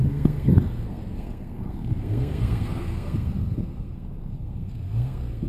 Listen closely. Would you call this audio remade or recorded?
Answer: remade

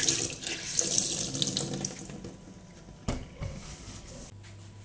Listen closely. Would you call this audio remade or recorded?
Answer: recorded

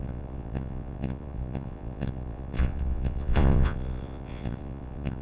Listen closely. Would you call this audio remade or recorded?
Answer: remade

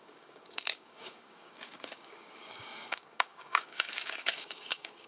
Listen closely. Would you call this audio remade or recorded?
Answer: remade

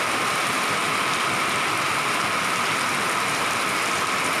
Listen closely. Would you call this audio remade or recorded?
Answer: recorded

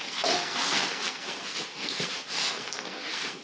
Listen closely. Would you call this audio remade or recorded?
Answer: remade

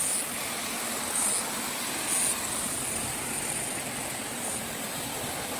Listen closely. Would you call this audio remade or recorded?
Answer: recorded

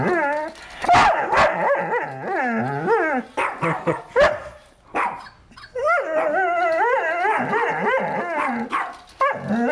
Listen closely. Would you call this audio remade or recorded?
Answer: recorded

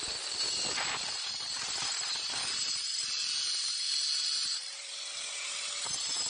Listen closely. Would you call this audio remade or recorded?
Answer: recorded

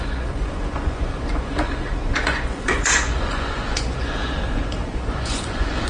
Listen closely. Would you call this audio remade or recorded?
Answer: remade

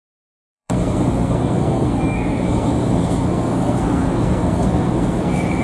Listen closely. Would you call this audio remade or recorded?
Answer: remade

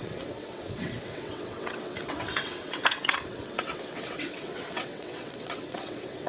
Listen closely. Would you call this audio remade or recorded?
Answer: remade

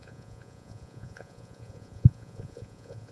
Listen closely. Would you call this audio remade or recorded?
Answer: remade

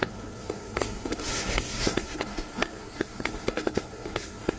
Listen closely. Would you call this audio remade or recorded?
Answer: remade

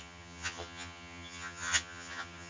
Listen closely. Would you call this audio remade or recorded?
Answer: remade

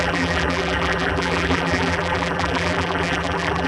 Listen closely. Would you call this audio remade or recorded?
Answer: remade